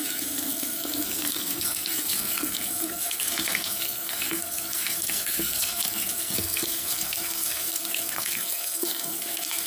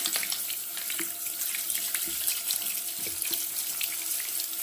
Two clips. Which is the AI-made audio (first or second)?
first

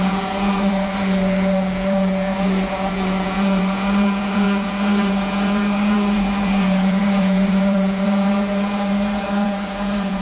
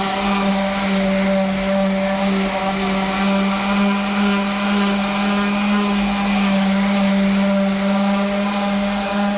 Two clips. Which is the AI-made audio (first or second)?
first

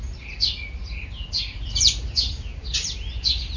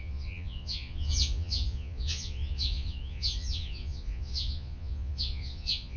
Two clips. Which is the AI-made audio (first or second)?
second